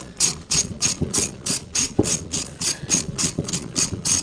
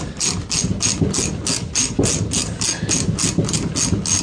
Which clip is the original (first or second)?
second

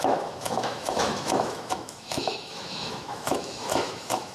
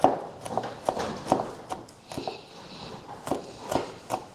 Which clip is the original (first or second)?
second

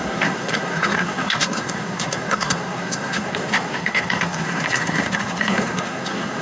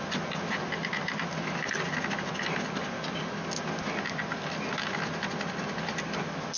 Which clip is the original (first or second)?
second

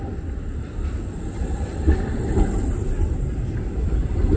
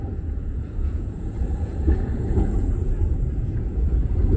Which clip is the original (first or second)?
first